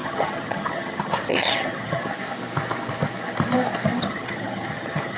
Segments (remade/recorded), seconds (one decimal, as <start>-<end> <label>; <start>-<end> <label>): 0.0-2.0 remade; 2.0-4.0 recorded; 4.0-5.2 remade